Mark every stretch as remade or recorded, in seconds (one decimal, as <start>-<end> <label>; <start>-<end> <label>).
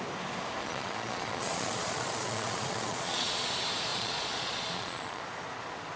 0.0-0.6 recorded; 0.6-3.5 remade; 3.5-3.9 recorded; 3.9-5.2 remade; 5.2-6.0 recorded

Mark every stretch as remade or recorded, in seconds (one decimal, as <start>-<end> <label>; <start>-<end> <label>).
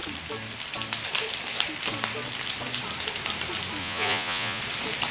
0.0-3.8 recorded; 3.8-4.6 remade; 4.6-5.1 recorded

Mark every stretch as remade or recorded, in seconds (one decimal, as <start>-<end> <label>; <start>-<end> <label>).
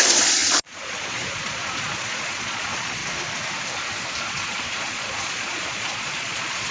0.0-3.0 remade; 3.0-4.2 recorded; 4.2-6.7 remade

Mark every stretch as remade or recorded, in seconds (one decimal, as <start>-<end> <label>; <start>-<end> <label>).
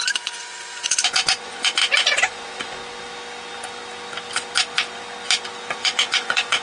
0.0-2.8 remade; 2.8-5.8 recorded; 5.8-6.6 remade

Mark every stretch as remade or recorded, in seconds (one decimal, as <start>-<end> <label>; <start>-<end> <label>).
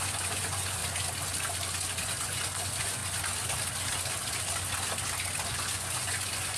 0.0-0.8 remade; 0.8-2.0 recorded; 2.0-3.0 remade; 3.0-5.5 recorded; 5.5-6.6 remade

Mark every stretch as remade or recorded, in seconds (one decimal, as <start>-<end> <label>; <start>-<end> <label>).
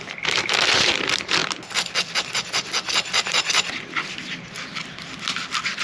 0.0-5.8 recorded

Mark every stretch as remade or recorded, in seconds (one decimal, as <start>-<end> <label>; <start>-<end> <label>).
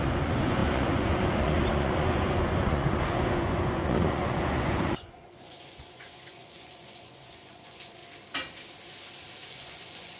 0.0-8.0 remade; 8.0-9.5 recorded; 9.5-10.2 remade